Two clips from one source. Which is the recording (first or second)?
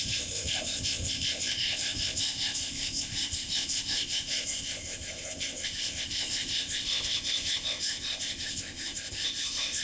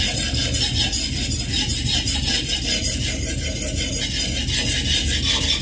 second